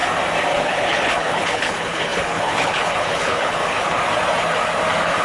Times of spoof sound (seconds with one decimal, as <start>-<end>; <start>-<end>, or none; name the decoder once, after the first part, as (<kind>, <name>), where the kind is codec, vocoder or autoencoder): 0.6-4.0 (codec, HILCodec)